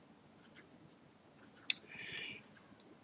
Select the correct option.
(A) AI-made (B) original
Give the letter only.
B